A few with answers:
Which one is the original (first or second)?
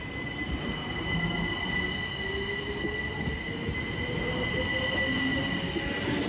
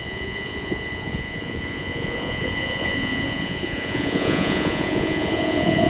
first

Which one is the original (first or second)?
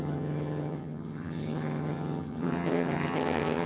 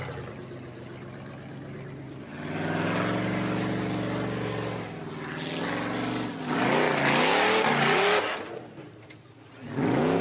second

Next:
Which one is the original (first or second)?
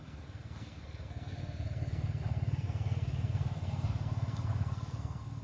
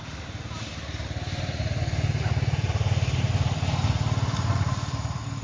second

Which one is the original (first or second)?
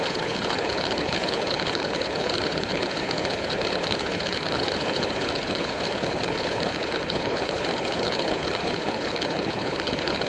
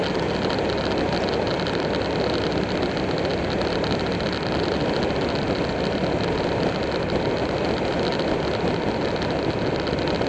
second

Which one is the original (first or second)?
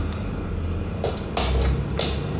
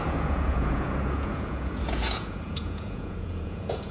first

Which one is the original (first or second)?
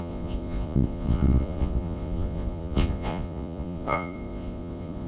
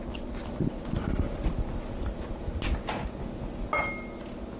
second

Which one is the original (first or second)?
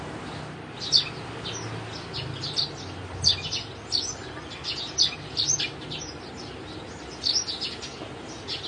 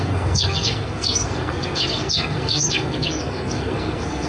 first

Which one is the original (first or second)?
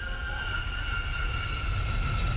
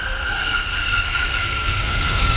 first